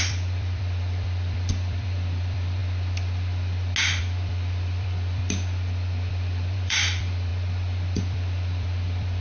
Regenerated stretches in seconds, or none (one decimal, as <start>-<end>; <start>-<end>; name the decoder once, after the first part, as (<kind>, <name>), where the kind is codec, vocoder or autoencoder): 0.0-2.6 (vocoder, BigVGAN v2); 4.0-5.2; 6.1-7.3; 8.0-9.2